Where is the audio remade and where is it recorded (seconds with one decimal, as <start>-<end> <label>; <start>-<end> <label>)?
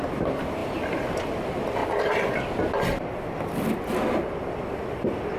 0.0-1.8 remade; 1.8-4.3 recorded; 4.3-5.4 remade